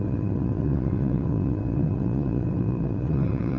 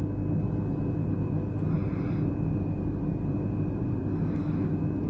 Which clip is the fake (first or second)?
first